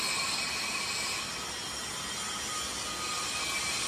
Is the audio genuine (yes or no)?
yes